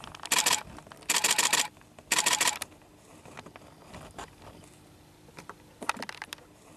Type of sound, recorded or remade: recorded